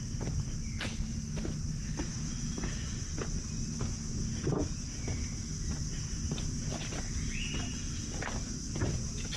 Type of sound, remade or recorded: recorded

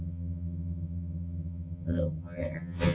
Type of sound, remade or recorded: remade